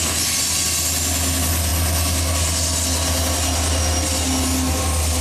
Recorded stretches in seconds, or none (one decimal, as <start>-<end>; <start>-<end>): 0.0-5.2